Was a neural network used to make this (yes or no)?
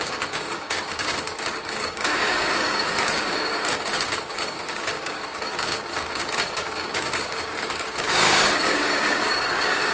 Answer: yes